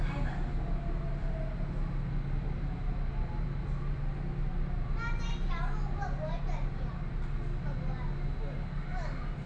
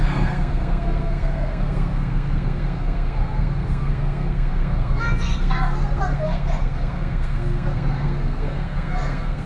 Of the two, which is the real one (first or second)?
first